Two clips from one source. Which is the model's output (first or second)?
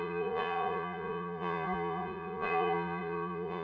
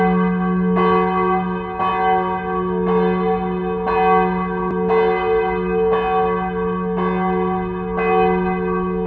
first